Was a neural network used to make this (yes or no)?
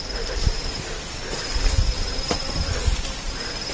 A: no